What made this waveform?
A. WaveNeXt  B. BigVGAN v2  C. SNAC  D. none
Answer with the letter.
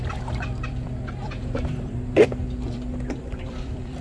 B